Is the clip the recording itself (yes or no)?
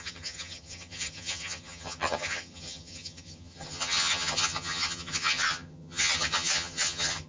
no